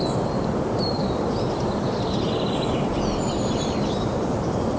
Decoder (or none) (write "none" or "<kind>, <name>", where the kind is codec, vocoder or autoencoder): vocoder, BigVGAN v2